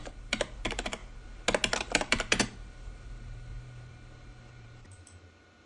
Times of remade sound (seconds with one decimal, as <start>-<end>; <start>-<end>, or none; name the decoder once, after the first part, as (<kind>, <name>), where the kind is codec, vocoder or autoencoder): 0.0-1.0 (vocoder, BigVGAN v2); 1.8-5.7